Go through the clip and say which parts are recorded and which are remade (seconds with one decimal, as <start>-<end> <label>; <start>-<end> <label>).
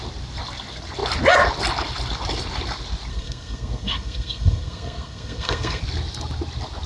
0.0-3.1 recorded; 3.1-5.8 remade; 5.8-6.9 recorded